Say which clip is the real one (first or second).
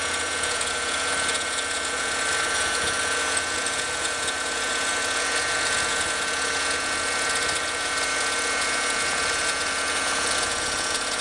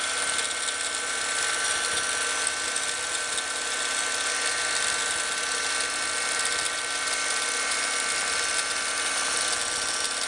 second